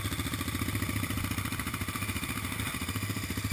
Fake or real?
real